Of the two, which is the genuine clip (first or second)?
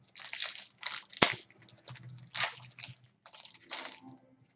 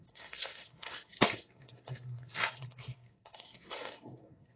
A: first